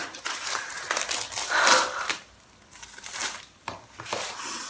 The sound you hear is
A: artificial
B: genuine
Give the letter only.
B